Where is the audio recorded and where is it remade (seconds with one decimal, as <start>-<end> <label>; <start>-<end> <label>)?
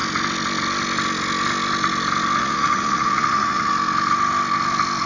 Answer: 0.0-2.4 recorded; 2.4-3.7 remade; 3.7-5.1 recorded